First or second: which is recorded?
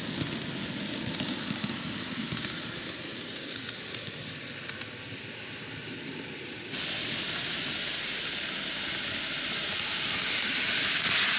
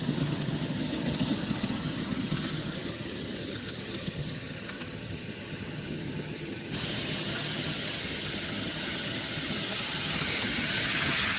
first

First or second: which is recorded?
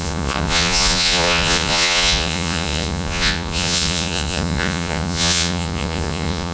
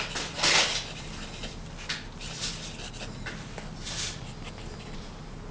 second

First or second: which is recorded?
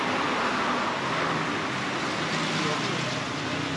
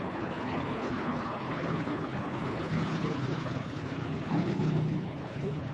first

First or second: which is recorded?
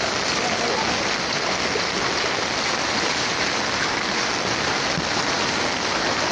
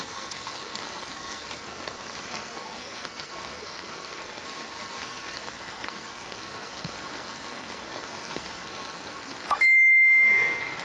first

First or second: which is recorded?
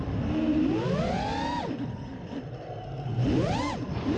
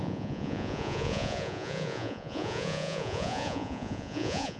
first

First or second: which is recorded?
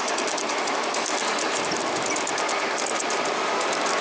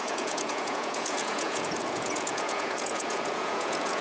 first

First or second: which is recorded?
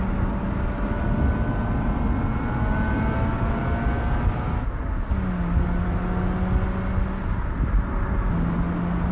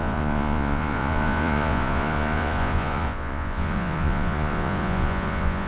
first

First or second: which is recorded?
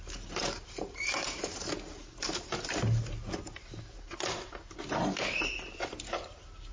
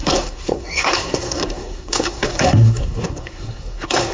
first